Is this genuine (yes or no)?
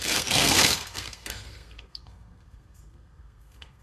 no